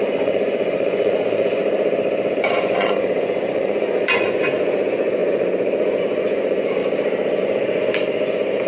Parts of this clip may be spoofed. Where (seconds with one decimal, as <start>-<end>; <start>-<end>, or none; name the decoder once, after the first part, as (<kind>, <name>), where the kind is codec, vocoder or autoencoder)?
0.0-1.6 (vocoder, Vocos); 2.3-6.8; 7.4-8.7